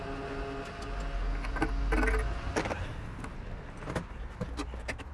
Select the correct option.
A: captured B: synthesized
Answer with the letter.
A